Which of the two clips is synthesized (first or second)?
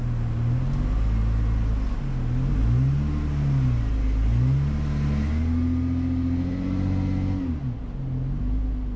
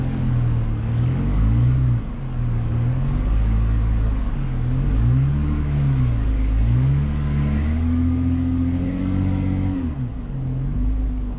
second